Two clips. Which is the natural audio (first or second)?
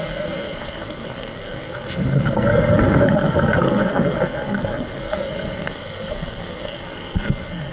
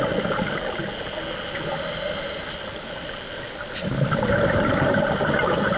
second